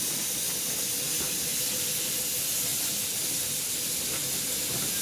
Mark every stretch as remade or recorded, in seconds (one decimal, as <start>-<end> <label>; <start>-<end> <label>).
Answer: 0.0-5.0 recorded